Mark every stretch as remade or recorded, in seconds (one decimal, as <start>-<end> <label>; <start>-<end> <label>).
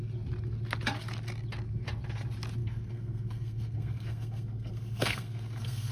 0.0-2.6 recorded; 2.6-5.9 remade